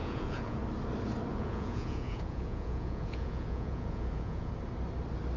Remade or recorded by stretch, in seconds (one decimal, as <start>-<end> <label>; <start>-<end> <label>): 0.0-0.6 remade; 0.6-1.3 recorded; 1.3-4.5 remade; 4.5-5.4 recorded

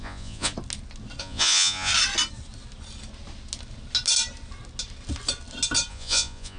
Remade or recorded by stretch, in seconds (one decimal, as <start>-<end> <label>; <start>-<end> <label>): 0.0-0.5 remade; 0.5-1.2 recorded; 1.2-1.9 remade; 1.9-5.9 recorded; 5.9-6.6 remade